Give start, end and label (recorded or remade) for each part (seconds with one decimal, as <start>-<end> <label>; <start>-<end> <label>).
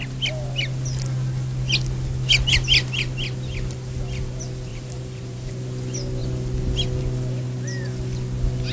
0.0-4.7 recorded; 4.7-5.5 remade; 5.5-8.7 recorded